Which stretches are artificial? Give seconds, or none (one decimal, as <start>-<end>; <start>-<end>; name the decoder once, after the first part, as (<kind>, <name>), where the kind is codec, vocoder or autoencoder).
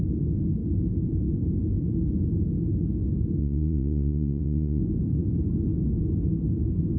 3.4-4.8 (vocoder, Vocos)